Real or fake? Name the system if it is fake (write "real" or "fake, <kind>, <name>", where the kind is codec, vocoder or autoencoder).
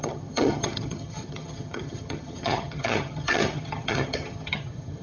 fake, vocoder, HiFi-GAN